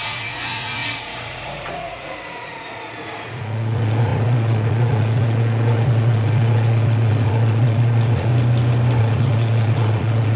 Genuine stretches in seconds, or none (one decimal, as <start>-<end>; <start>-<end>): 8.3-9.0